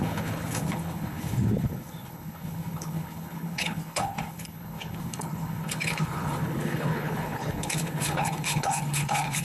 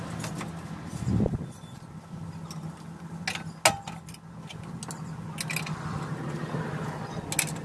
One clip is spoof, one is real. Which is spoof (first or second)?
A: first